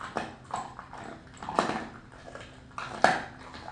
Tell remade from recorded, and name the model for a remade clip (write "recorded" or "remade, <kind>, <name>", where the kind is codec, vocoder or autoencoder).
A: recorded